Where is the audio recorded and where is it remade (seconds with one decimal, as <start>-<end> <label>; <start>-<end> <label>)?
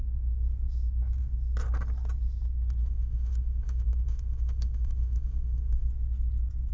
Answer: 0.0-2.8 recorded; 2.8-5.9 remade; 5.9-6.7 recorded